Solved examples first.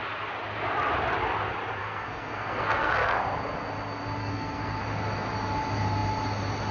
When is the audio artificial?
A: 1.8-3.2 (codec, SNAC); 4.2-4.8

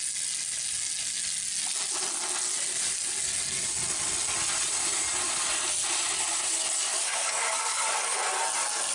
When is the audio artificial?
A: 6.9-8.2 (codec, DAC)